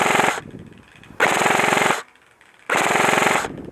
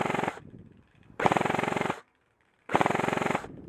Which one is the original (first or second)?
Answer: first